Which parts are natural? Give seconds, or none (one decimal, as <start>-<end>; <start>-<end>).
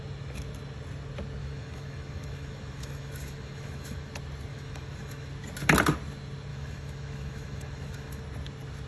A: 0.0-1.4; 4.1-4.5; 5.3-6.5; 8.2-8.9